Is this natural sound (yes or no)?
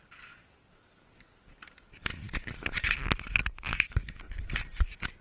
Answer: yes